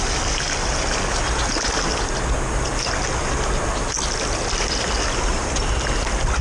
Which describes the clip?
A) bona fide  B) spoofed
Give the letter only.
A